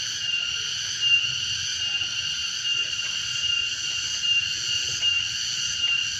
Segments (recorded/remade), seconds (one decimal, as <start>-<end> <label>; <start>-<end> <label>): 0.0-2.4 recorded; 2.4-2.9 remade; 2.9-6.2 recorded